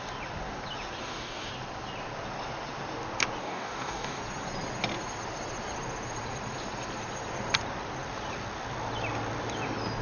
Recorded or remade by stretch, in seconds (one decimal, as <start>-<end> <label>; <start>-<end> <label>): 0.0-1.0 recorded; 1.0-1.5 remade; 1.5-3.4 recorded; 3.4-4.2 remade; 4.2-10.0 recorded